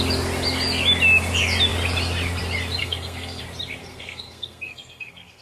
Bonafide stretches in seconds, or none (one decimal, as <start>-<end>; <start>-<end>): 0.0-2.8; 3.4-3.8